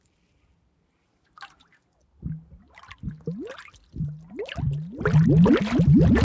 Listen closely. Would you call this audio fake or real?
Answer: real